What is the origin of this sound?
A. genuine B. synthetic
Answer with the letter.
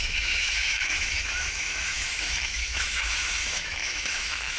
B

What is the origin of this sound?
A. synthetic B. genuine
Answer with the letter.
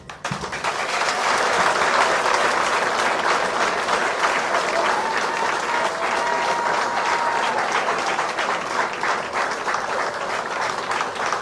B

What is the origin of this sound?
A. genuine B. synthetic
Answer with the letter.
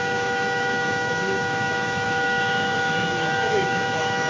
B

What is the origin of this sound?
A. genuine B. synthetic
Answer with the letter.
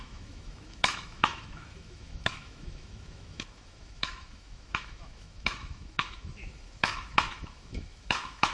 B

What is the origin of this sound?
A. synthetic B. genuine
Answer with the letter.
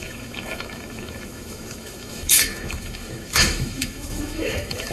A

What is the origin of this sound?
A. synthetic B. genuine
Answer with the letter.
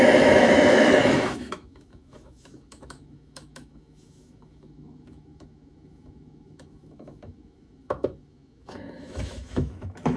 A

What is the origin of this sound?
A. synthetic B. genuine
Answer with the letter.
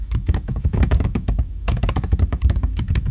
A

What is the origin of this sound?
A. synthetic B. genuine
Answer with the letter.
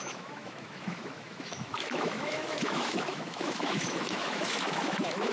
A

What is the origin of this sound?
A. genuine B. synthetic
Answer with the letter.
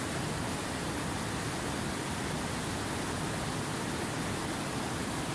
A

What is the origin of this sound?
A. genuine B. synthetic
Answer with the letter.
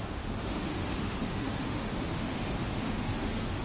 B